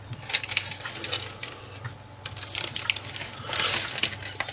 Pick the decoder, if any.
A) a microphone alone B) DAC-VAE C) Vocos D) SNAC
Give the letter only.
A